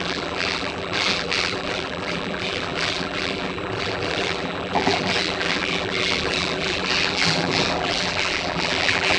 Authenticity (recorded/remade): remade